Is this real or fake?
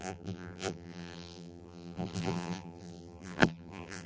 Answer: fake